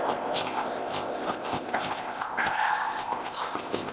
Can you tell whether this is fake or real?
fake